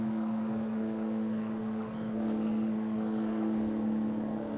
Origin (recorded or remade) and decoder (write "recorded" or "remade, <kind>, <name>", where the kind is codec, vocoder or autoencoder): remade, codec, SNAC